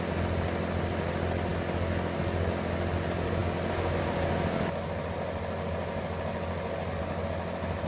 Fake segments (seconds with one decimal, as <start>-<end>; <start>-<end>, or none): none